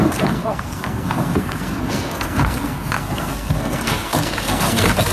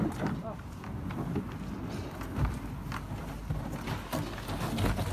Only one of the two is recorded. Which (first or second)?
second